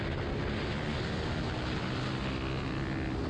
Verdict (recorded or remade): recorded